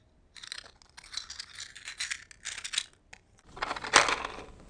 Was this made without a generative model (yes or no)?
yes